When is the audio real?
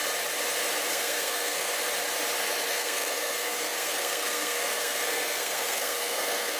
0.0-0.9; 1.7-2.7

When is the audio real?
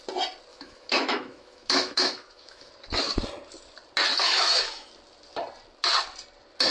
0.0-0.5; 2.7-4.1; 4.9-6.7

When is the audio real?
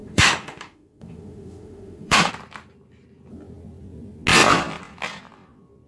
2.3-5.9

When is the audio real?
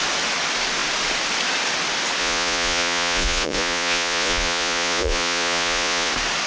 0.0-2.2; 6.1-6.5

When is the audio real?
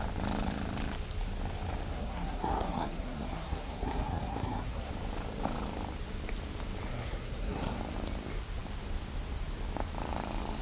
0.0-1.9; 4.9-6.9; 7.8-10.6